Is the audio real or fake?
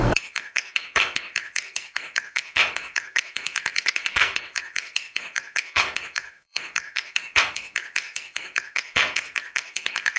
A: fake